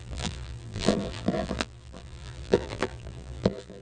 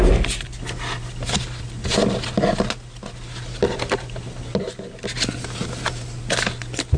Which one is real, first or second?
second